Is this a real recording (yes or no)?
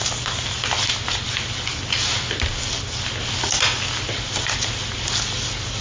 yes